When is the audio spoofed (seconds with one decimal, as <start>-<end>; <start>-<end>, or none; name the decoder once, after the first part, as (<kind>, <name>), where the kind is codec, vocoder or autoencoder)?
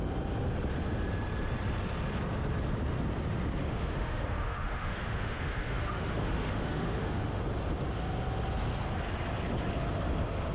3.6-7.4 (autoencoder, DAC-VAE)